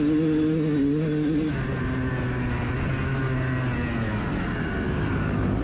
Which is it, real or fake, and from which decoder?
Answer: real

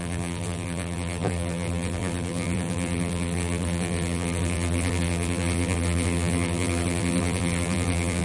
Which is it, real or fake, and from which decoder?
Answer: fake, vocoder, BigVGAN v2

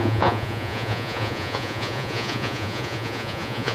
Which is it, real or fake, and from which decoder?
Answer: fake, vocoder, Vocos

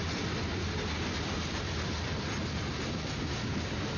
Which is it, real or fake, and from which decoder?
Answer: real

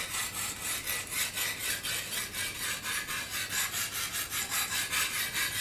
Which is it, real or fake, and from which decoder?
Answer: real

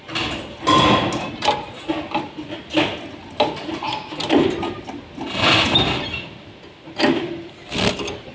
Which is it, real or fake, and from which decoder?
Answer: real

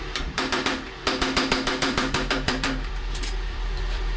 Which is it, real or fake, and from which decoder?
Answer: fake, vocoder, BigVGAN v2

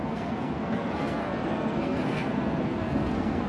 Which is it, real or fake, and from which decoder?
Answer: fake, codec, SNAC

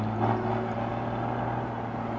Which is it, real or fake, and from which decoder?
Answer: real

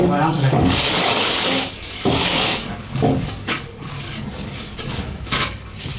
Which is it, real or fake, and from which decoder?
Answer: fake, codec, DAC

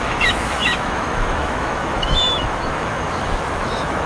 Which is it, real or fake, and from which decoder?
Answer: fake, autoencoder, DAC-VAE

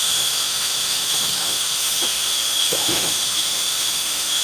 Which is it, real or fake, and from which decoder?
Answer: fake, autoencoder, DAC-VAE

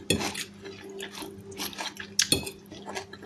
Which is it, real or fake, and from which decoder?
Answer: real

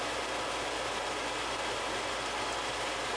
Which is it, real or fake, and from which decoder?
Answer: real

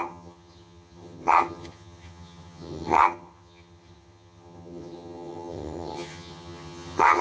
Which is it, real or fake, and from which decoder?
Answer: fake, vocoder, HiFi-GAN